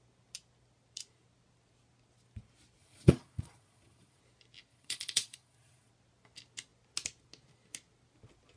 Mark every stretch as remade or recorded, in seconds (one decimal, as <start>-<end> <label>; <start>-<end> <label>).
0.0-2.8 recorded; 2.8-4.2 remade; 4.2-4.7 recorded; 4.7-5.9 remade; 5.9-8.6 recorded